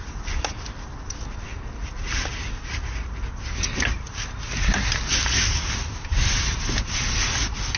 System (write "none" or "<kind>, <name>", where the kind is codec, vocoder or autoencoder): none